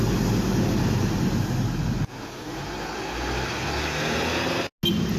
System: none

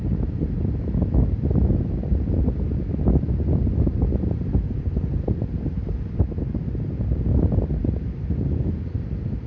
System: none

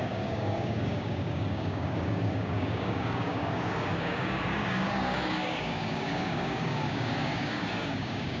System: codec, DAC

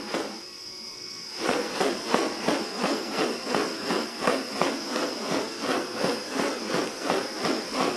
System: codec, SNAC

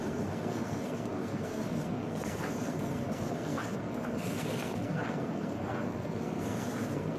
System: codec, SNAC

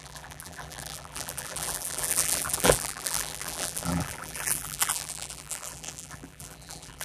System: vocoder, BigVGAN v2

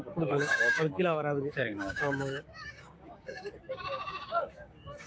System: codec, DAC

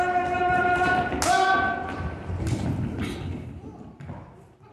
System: none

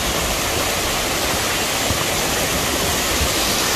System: none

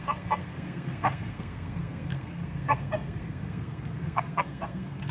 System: codec, SNAC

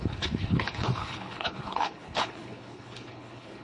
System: codec, HILCodec